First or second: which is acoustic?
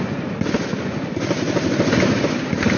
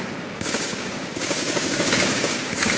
first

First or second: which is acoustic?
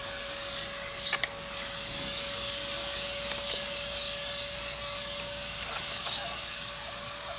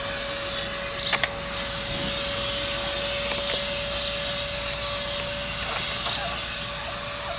second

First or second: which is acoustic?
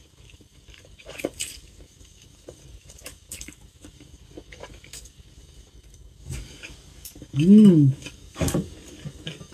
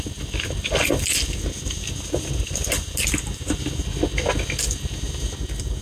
second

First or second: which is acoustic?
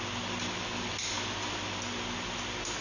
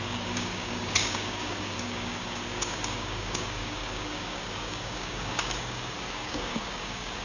first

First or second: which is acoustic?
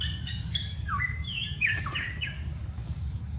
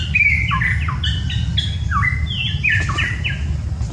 second